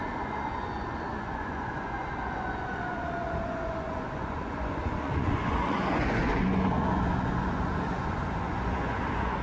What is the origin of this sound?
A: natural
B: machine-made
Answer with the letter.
B